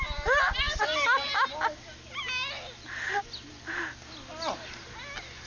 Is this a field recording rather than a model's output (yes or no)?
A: yes